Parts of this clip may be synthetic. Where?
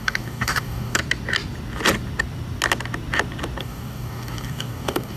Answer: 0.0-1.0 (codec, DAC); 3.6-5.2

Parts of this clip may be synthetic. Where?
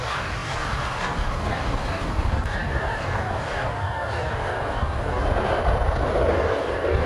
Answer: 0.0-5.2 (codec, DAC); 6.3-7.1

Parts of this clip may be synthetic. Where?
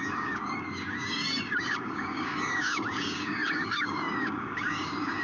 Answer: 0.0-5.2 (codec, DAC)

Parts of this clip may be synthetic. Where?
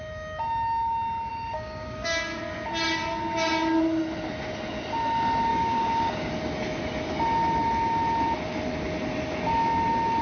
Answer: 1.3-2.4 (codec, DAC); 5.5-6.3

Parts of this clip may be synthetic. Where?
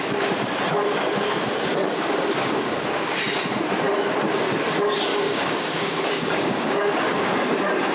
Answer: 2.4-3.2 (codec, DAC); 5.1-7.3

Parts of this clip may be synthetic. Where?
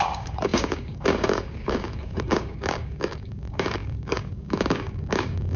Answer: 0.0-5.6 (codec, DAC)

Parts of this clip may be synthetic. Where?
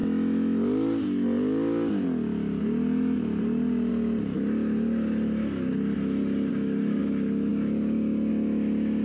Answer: 6.5-7.0 (codec, DAC)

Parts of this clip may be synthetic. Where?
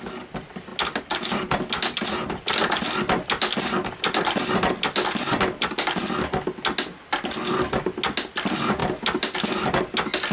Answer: none